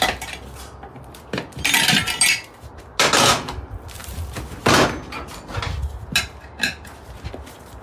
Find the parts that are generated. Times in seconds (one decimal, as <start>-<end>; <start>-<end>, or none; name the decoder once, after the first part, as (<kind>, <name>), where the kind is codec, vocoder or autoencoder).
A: none